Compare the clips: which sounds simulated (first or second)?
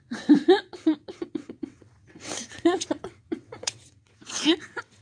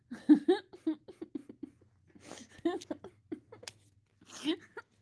first